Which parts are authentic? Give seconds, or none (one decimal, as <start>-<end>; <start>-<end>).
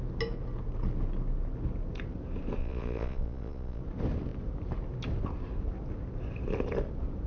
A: 0.0-2.6; 3.8-7.3